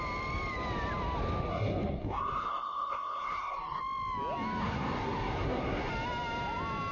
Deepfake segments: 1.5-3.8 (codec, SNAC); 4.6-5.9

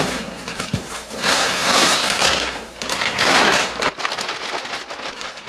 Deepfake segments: 0.0-3.7 (codec, SNAC); 5.1-5.5

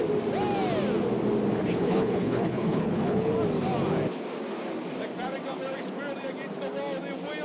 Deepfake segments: 1.8-3.3 (codec, HILCodec)

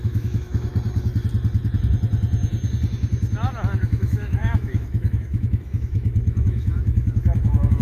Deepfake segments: 0.0-0.7 (autoencoder, DAC-VAE); 3.8-7.8

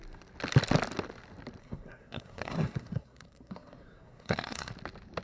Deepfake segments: 1.6-4.7 (codec, SNAC)

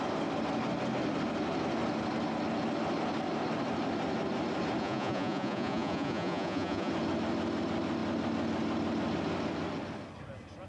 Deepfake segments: 4.8-6.9 (vocoder, Vocos)

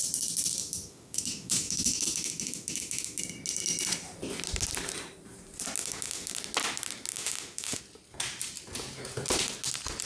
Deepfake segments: 0.6-3.2 (autoencoder, DAC-VAE); 5.8-6.3; 7.1-7.8